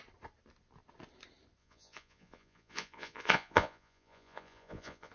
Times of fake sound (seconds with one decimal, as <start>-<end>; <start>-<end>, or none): 1.6-5.1